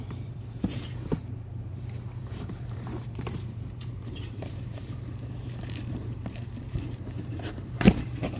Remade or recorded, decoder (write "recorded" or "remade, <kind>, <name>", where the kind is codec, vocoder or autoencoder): remade, vocoder, BigVGAN v2